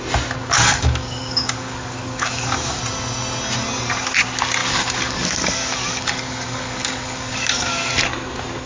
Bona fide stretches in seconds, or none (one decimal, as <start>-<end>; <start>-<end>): 0.0-0.4; 2.8-4.6; 7.9-8.7